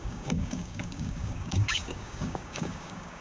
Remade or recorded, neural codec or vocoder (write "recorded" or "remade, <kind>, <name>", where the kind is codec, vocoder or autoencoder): remade, codec, DAC